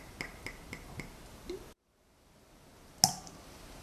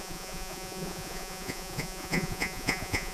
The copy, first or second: second